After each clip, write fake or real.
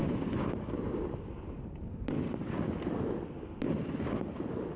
real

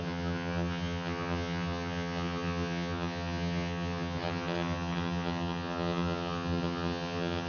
fake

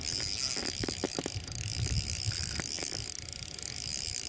real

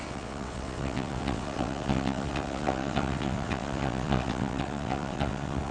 fake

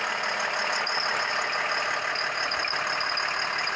real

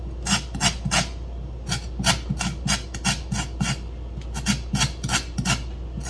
real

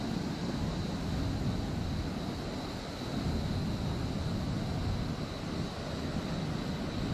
real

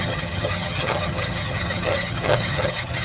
fake